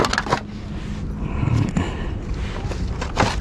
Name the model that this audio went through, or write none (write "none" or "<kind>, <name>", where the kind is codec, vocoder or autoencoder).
none